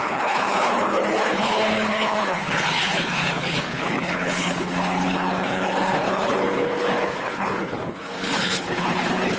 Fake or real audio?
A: fake